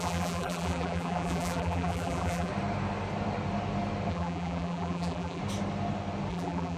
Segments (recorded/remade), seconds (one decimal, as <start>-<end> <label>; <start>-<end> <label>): 0.0-2.5 remade; 2.5-4.1 recorded; 4.1-5.4 remade; 5.4-6.3 recorded; 6.3-6.8 remade